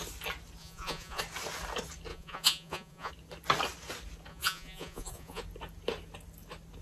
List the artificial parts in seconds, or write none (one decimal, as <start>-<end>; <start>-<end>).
0.6-1.2; 2.1-3.1; 4.3-5.4